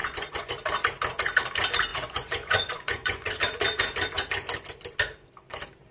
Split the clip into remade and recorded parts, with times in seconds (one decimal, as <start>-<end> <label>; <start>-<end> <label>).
0.0-0.5 remade; 0.5-1.9 recorded; 1.9-3.3 remade; 3.3-5.9 recorded